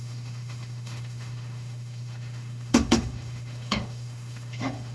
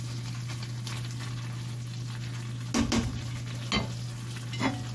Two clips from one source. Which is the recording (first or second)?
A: second